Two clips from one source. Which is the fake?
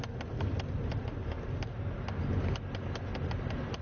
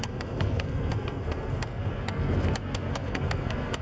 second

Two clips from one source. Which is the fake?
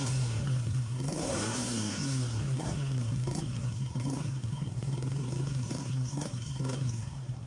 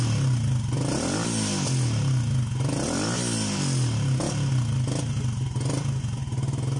first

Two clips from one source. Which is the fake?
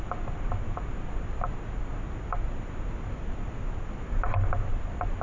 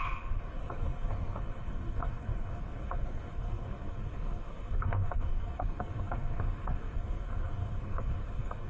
second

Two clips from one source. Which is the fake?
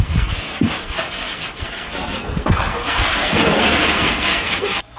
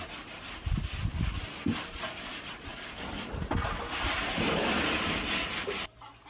first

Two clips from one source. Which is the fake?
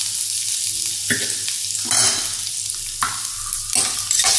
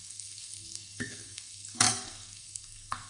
second